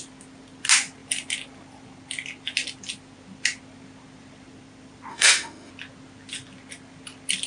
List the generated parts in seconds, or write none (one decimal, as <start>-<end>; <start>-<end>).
5.1-5.7